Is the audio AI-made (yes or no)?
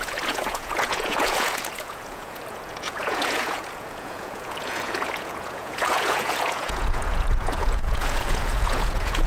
yes